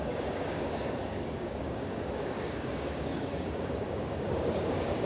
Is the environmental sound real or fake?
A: fake